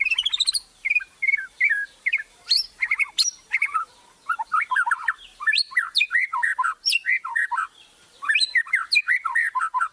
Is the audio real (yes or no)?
no